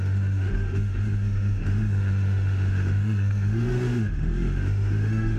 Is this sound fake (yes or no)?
yes